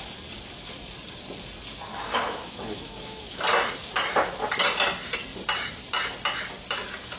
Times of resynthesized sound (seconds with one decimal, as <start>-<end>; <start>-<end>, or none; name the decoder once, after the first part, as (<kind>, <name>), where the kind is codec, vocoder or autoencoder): 1.9-3.2 (autoencoder, DAC-VAE)